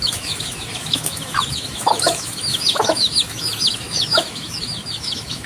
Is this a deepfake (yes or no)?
yes